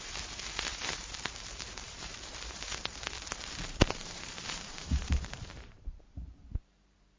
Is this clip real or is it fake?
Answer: fake